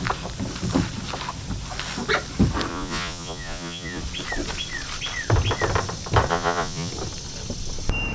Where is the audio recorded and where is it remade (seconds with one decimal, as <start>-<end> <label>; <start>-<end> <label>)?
0.0-2.7 recorded; 2.7-4.0 remade; 4.0-6.3 recorded; 6.3-6.9 remade; 6.9-8.1 recorded